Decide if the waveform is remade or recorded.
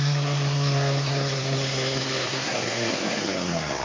remade